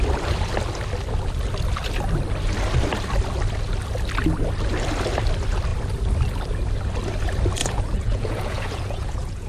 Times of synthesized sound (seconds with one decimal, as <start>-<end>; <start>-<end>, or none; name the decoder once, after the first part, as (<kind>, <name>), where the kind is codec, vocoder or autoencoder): 7.6-9.5 (vocoder, Vocos)